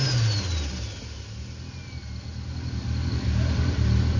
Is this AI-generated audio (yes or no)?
no